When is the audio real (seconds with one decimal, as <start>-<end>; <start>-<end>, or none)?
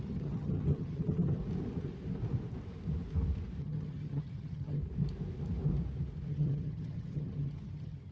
1.4-3.6; 4.8-6.3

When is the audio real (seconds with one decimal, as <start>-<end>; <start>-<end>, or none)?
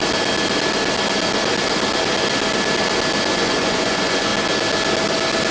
0.0-3.3; 4.3-5.5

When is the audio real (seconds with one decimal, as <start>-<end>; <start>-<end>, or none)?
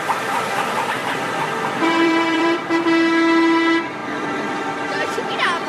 0.0-1.0; 2.7-4.0; 5.2-5.7